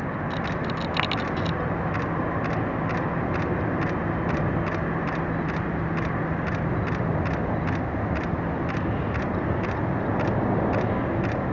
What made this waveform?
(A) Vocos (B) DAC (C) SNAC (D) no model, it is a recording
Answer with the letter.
D